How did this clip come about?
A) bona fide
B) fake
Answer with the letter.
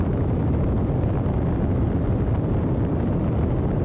A